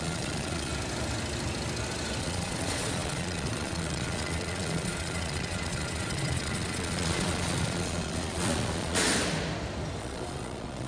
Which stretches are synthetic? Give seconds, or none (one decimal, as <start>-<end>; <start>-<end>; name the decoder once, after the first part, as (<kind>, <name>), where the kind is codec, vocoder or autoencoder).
0.0-0.7 (vocoder, Vocos); 2.2-9.1; 10.0-10.9